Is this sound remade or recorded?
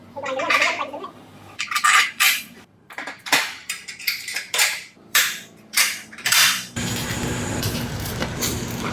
remade